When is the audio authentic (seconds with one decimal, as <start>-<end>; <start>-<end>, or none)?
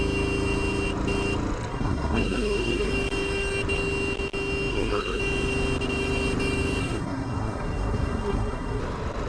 0.0-1.7; 2.9-4.7; 5.2-6.8; 8.8-9.3